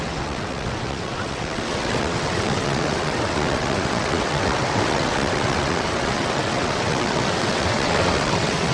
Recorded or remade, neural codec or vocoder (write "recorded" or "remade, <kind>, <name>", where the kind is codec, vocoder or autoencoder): remade, vocoder, WaveNeXt